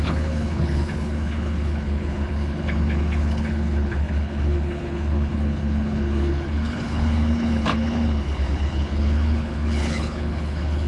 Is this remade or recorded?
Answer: remade